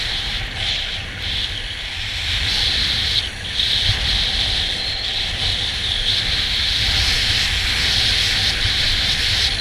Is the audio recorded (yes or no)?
yes